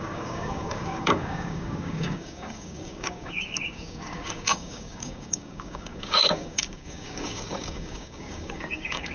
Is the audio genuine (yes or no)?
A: no